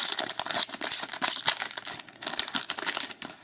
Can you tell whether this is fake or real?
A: real